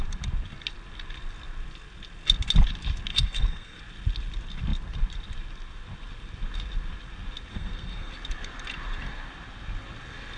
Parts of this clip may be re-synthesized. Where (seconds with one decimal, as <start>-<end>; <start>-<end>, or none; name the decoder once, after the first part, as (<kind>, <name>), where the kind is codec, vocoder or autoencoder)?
3.1-3.8 (codec, SNAC); 7.5-8.1